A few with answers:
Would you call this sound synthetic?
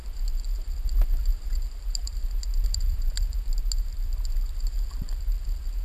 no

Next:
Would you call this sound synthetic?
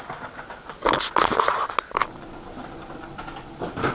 no